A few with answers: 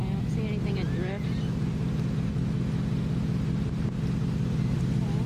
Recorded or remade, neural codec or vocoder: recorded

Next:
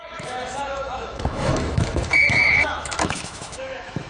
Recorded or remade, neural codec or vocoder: remade, autoencoder, DAC-VAE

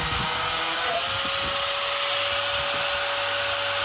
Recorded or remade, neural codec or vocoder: recorded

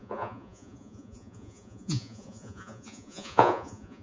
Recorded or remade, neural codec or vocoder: remade, vocoder, Vocos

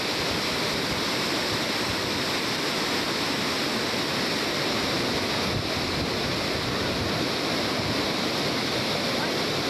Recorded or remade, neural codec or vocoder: recorded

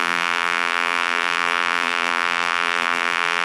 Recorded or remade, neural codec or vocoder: remade, vocoder, BigVGAN v2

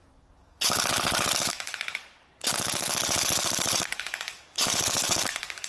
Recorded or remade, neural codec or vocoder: remade, codec, DAC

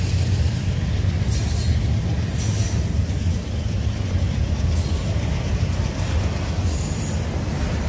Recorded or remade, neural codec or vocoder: recorded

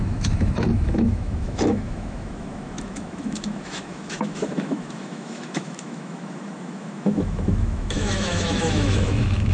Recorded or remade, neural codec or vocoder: remade, autoencoder, DAC-VAE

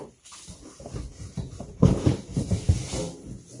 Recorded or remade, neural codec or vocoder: recorded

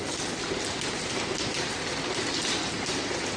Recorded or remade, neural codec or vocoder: recorded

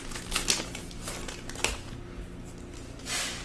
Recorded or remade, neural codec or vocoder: recorded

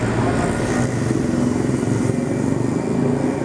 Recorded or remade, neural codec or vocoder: recorded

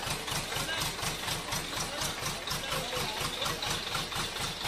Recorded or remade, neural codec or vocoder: recorded